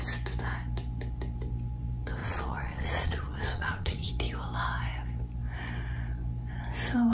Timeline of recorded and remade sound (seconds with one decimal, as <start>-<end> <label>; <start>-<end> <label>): 0.0-2.2 recorded; 2.2-4.1 remade; 4.1-7.1 recorded